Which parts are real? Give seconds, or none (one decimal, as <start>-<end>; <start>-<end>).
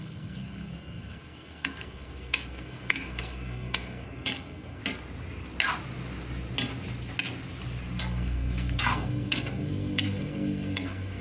4.8-8.0